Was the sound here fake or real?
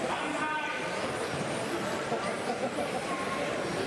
real